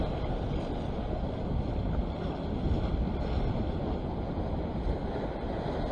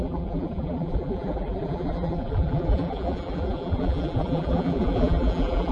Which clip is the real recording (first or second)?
first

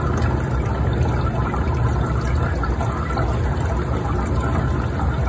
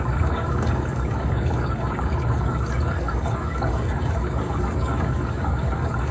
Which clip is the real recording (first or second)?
first